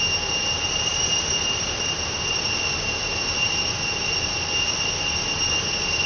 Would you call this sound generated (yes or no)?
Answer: no